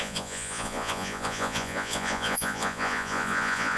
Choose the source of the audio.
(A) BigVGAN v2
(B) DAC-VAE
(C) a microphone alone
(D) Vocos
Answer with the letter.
D